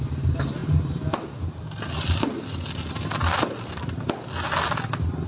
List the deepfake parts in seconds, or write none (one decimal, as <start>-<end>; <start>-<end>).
none